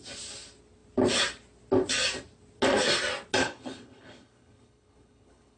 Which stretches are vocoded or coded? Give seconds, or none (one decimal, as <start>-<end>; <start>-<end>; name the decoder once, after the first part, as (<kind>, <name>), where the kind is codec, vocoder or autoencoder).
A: 3.4-5.6 (codec, HILCodec)